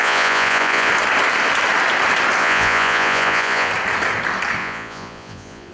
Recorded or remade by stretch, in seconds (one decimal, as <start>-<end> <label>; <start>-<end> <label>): 0.0-0.9 remade; 0.9-2.4 recorded; 2.4-3.7 remade; 3.7-4.6 recorded; 4.6-5.7 remade